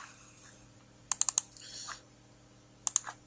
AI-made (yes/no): no